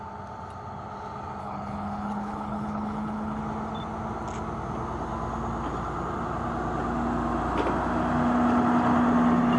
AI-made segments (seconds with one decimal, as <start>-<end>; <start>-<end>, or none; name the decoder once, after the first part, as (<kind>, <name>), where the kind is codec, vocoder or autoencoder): 1.4-3.4 (codec, HILCodec)